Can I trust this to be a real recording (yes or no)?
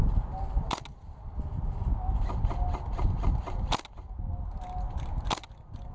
yes